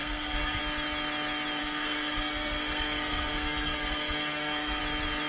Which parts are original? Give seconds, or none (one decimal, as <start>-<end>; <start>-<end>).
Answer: 0.6-1.6; 4.8-5.3